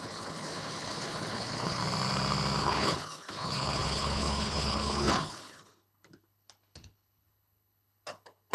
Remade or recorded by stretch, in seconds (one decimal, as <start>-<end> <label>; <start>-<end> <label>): 0.0-1.8 remade; 1.8-2.6 recorded; 2.6-8.5 remade